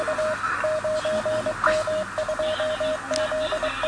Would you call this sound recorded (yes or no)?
yes